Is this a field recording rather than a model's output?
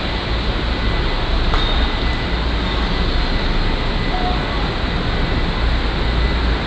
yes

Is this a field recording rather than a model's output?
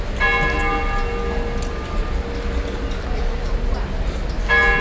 yes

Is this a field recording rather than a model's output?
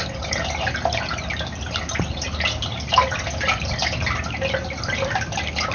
yes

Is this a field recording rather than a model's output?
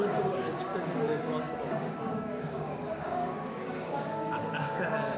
no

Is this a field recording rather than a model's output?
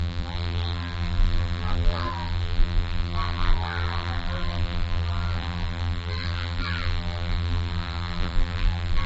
no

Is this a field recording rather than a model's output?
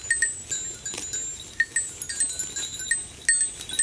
yes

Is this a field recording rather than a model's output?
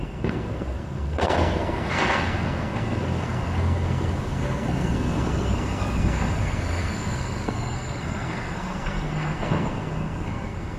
no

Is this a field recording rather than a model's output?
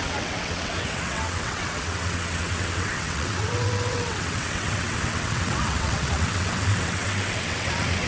no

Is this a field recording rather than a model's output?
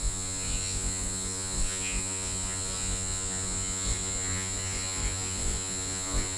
no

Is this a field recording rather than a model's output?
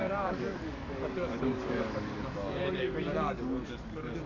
no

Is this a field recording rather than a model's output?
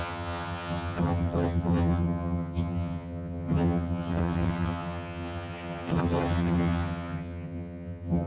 no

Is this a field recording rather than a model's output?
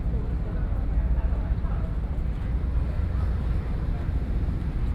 yes